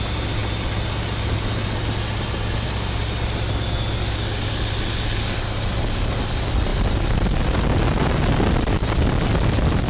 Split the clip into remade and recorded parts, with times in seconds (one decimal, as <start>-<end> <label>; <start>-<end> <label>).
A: 0.0-9.9 recorded